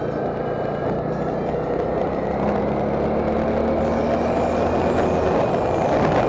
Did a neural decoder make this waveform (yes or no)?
no